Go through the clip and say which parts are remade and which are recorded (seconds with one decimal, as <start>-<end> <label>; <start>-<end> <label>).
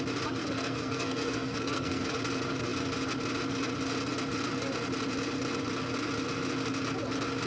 0.0-0.4 recorded; 0.4-2.1 remade; 2.1-7.5 recorded